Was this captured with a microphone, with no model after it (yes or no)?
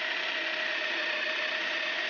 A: yes